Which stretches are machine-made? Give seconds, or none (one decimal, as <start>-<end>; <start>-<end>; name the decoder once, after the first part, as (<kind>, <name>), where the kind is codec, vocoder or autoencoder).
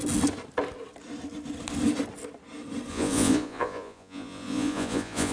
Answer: 2.9-5.3 (vocoder, Vocos)